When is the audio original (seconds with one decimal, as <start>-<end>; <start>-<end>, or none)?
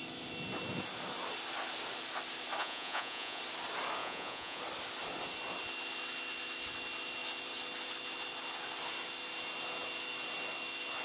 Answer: 0.0-2.6; 3.4-4.0; 4.6-11.0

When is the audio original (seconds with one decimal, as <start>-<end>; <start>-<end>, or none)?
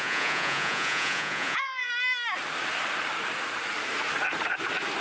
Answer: 1.9-5.0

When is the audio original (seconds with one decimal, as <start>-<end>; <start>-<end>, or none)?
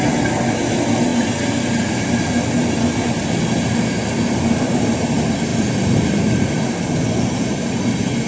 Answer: 0.0-5.5; 6.6-8.3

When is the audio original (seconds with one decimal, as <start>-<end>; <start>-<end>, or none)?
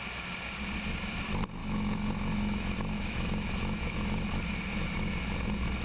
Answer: 0.0-1.6; 5.1-5.8